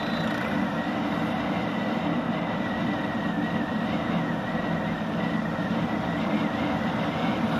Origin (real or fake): real